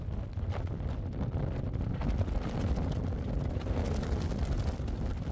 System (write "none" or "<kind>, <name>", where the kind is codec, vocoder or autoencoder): none